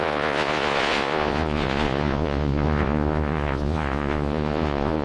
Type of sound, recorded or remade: remade